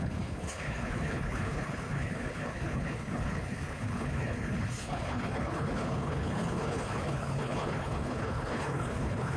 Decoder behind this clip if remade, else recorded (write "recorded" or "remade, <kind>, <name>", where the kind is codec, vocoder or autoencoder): remade, codec, HILCodec